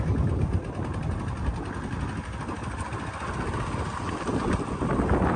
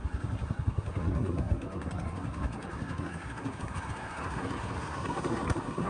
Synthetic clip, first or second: second